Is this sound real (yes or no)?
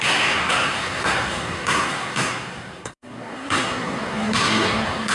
no